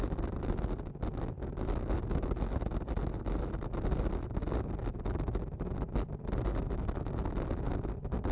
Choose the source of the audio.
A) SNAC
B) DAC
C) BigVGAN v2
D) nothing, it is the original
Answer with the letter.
D